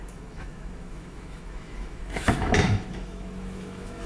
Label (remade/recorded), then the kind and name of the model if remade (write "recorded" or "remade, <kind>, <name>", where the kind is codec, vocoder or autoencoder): remade, autoencoder, DAC-VAE